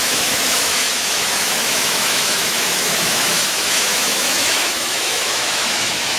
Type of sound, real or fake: fake